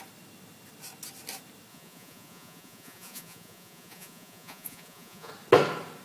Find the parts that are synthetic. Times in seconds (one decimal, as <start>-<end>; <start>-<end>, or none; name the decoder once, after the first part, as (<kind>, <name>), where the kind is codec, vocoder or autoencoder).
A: 1.7-5.3 (vocoder, Vocos)